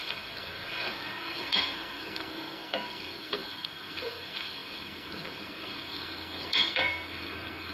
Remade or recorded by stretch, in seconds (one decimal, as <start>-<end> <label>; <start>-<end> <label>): 0.0-7.7 remade